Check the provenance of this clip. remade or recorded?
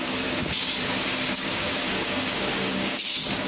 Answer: remade